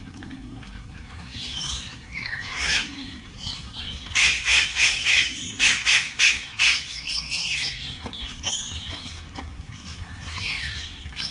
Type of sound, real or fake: fake